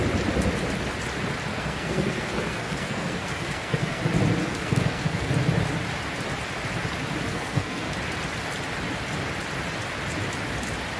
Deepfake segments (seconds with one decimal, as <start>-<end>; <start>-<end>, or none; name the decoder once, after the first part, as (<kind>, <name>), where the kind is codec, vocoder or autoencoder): 1.5-4.0 (codec, SNAC); 4.4-5.3; 7.3-7.9